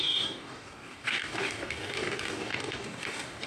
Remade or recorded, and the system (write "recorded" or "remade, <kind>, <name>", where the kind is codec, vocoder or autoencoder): remade, codec, DAC